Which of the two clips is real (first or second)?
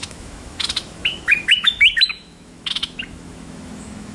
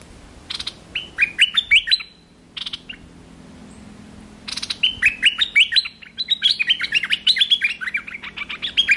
second